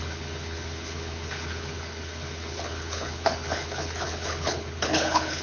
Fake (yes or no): yes